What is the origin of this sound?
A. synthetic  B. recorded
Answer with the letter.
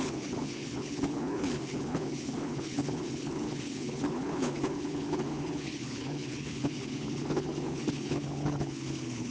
A